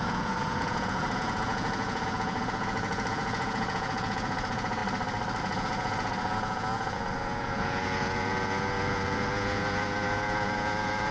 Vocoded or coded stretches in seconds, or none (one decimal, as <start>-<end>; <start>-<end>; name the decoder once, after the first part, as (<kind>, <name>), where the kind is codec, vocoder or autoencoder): 0.0-4.8 (vocoder, Vocos); 5.4-11.1

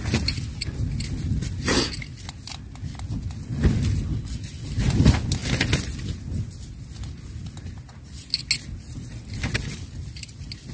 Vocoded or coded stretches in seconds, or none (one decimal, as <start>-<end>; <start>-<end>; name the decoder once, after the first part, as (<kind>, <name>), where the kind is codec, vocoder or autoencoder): none

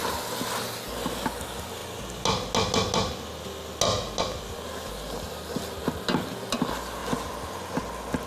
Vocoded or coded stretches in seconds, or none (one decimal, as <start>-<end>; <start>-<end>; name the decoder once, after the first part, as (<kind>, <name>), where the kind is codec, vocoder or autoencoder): none

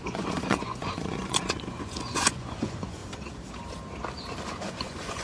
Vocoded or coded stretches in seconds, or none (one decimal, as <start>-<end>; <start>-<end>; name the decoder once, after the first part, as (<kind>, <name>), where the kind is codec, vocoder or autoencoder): 0.0-3.0 (vocoder, Vocos); 4.5-5.2

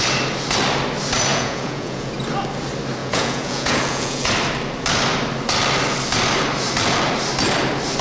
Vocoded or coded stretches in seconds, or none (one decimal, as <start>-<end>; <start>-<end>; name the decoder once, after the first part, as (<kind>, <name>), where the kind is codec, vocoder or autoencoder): 1.3-2.1 (vocoder, Vocos); 3.0-4.3

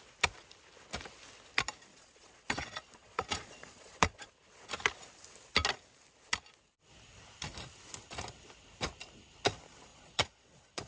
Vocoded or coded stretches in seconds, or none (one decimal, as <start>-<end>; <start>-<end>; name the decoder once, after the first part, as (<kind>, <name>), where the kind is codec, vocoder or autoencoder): 1.9-4.3 (vocoder, Vocos); 9.9-10.9